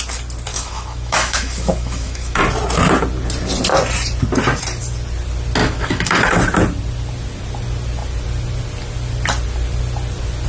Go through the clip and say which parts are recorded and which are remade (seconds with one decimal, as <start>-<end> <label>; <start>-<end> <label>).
0.0-0.5 recorded; 0.5-2.4 remade; 2.4-5.6 recorded; 5.6-6.4 remade; 6.4-10.5 recorded